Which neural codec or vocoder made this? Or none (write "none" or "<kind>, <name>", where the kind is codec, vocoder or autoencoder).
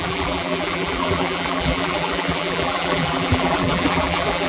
vocoder, BigVGAN v2